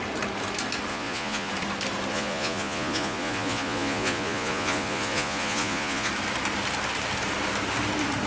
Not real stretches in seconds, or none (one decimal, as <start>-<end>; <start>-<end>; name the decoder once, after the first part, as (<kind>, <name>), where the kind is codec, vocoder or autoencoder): 0.9-1.5 (vocoder, Vocos); 2.1-6.1